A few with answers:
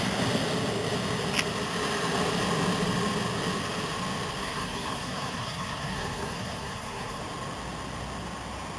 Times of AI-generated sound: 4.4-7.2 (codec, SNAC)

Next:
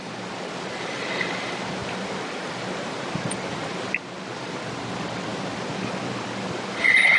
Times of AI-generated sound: 1.8-3.8 (vocoder, BigVGAN v2)

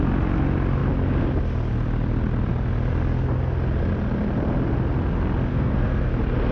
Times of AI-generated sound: 5.5-6.1 (codec, SNAC)

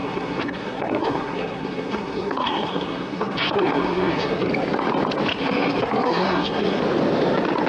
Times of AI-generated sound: 0.0-4.5 (codec, SNAC); 5.3-6.8